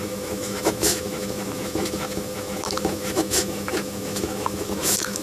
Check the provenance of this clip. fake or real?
fake